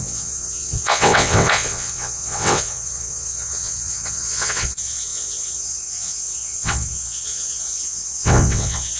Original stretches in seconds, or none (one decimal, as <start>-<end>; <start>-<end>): none

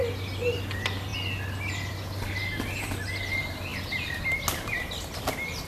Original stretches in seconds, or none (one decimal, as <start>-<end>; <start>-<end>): 0.0-5.7

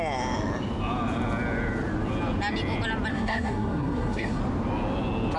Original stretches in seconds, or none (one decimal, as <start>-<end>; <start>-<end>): 0.0-3.1; 4.4-5.4